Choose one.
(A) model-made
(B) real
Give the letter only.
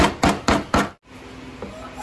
B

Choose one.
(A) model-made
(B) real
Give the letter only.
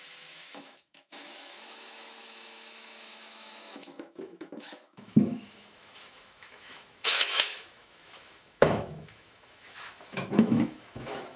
A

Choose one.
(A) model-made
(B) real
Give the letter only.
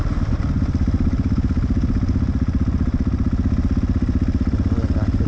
B